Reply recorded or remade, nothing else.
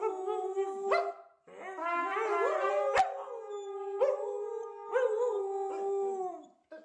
recorded